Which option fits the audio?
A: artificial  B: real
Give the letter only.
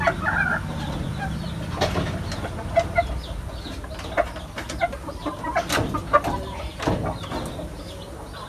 B